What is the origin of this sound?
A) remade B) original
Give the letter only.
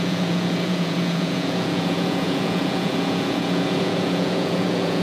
A